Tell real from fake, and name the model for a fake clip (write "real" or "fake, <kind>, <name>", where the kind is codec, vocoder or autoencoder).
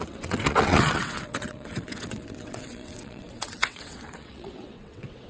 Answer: fake, vocoder, WaveNeXt